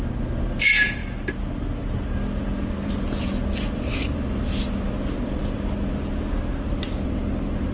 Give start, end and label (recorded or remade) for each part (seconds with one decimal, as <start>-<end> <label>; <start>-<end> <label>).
0.0-7.7 recorded